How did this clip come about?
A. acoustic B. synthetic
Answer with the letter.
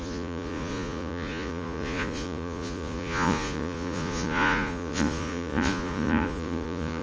B